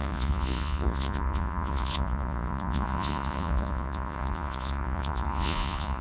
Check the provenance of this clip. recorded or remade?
remade